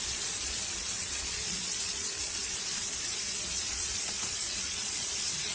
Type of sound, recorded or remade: remade